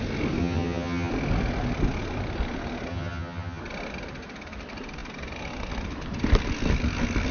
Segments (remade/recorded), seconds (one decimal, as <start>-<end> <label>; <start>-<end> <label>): 0.0-0.4 recorded; 0.4-1.1 remade; 1.1-2.9 recorded; 2.9-3.6 remade; 3.6-7.3 recorded

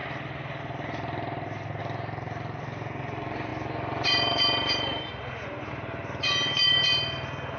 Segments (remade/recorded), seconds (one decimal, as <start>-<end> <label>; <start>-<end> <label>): 0.0-7.6 recorded

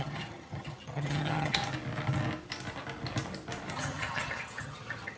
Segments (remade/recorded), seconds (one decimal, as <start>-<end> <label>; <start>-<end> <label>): 0.0-1.6 remade; 1.6-3.7 recorded; 3.7-5.2 remade

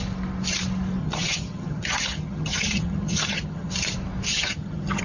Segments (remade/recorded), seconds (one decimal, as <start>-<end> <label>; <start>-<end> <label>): 0.0-1.0 recorded; 1.0-3.7 remade; 3.7-4.3 recorded; 4.3-5.0 remade

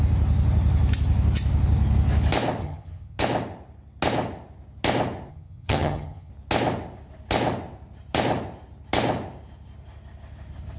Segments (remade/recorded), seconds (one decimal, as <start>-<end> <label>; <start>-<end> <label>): 0.0-2.6 recorded; 2.6-3.2 remade; 3.2-5.3 recorded; 5.3-6.3 remade; 6.3-10.8 recorded

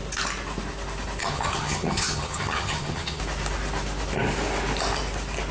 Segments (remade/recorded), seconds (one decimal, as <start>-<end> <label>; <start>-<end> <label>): 0.0-1.2 recorded; 1.2-3.2 remade; 3.2-5.5 recorded